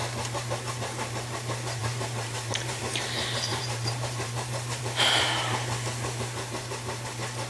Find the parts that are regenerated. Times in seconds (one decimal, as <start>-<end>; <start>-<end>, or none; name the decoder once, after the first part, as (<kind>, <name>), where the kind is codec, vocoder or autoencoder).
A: 1.8-2.8 (vocoder, BigVGAN v2); 3.5-4.8